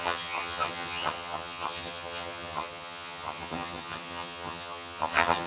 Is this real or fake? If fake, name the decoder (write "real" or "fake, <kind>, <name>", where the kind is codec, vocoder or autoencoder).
fake, vocoder, HiFi-GAN